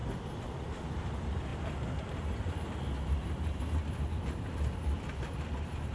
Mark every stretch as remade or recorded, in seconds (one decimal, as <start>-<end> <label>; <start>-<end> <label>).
0.0-5.9 recorded